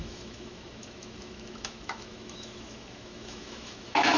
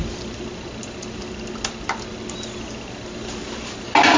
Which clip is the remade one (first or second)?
first